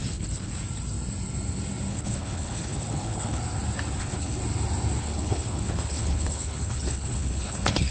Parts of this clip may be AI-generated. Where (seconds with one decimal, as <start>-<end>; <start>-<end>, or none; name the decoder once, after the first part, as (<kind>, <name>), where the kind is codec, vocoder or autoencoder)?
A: 0.0-0.5 (codec, HILCodec); 1.9-3.4; 4.0-4.4; 5.0-7.9